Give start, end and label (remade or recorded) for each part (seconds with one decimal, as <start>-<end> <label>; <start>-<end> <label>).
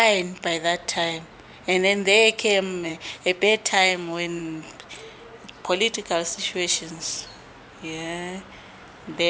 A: 0.0-2.9 recorded; 2.9-4.4 remade; 4.4-9.3 recorded